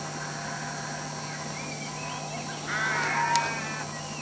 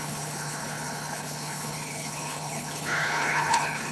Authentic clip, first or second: first